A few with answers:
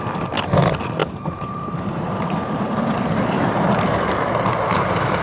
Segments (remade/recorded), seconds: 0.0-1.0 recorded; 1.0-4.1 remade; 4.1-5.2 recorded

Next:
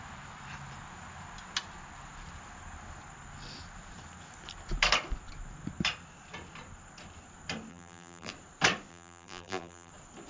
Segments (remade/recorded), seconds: 0.0-7.7 recorded; 7.7-8.3 remade; 8.3-8.9 recorded; 8.9-9.9 remade; 9.9-10.3 recorded

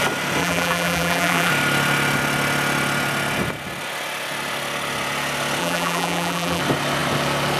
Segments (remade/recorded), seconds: 0.0-0.4 recorded; 0.4-1.5 remade; 1.5-5.6 recorded; 5.6-6.6 remade; 6.6-7.6 recorded

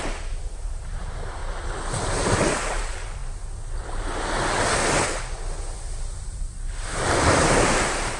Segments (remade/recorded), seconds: 0.0-1.4 remade; 1.4-2.5 recorded; 2.5-3.2 remade; 3.2-6.0 recorded; 6.0-8.2 remade

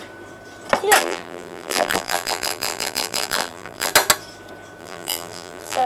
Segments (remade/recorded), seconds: 0.0-1.0 recorded; 1.0-3.9 remade; 3.9-4.8 recorded; 4.8-5.9 remade